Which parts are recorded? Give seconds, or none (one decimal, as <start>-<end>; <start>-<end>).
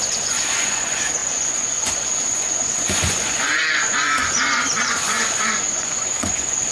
none